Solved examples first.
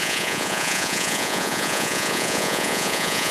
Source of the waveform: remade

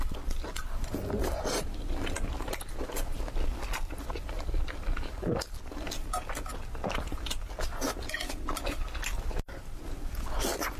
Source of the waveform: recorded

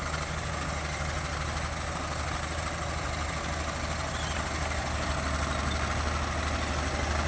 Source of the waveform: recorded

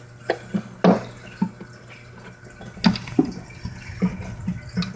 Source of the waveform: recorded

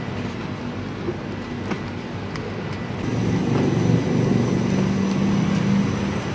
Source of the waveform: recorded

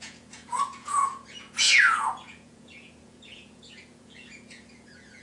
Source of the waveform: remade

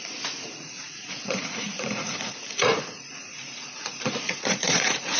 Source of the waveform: remade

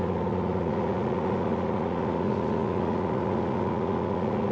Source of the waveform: remade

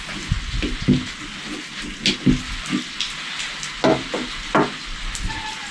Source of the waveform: recorded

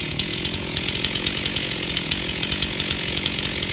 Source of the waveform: remade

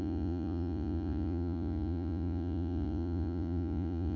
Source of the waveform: remade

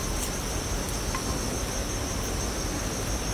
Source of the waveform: recorded